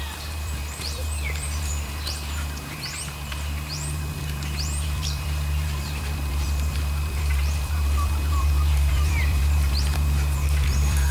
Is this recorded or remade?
remade